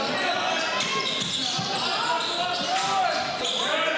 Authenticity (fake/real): real